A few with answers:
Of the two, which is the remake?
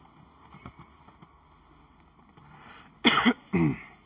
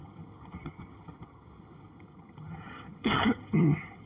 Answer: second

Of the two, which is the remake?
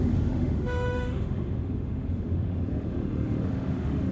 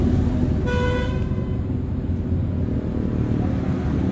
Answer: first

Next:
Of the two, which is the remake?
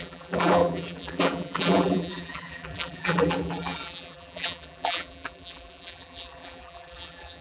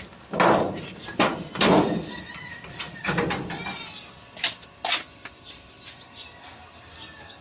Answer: first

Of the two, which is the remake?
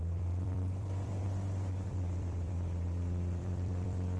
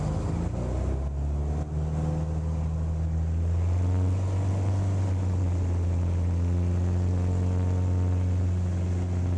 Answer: first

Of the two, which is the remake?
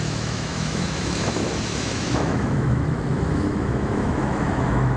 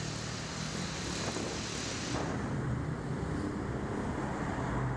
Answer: first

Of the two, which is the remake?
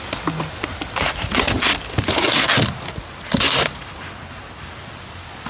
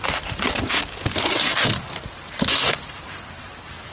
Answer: second